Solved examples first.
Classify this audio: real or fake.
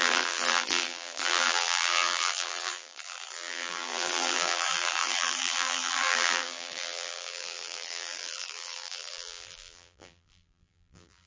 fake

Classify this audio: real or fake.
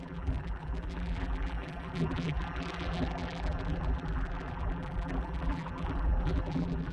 fake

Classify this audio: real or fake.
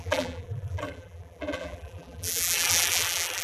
fake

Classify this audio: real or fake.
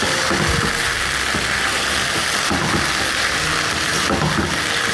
real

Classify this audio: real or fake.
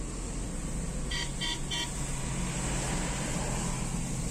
real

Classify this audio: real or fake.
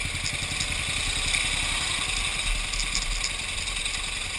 real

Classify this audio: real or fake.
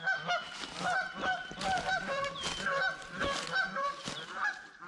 fake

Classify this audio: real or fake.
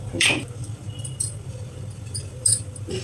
fake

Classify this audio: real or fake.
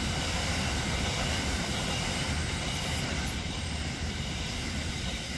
fake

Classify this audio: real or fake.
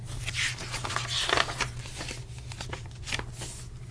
real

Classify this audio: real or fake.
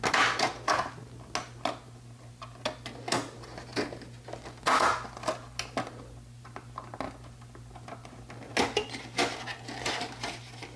real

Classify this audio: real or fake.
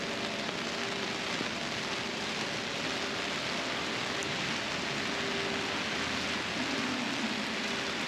real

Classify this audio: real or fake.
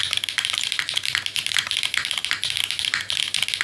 fake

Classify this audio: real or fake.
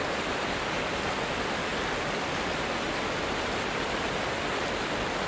real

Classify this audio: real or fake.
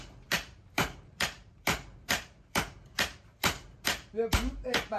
fake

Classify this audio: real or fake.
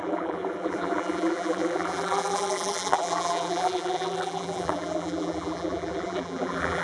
fake